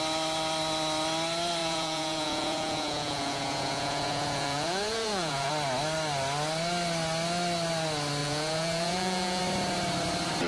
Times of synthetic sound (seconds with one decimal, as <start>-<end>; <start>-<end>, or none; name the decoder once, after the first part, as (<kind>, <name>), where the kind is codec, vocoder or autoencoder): 1.6-5.5 (vocoder, Vocos); 8.2-9.4